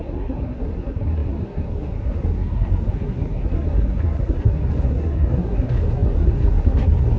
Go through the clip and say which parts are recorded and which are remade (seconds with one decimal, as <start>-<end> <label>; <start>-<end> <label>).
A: 0.0-7.2 remade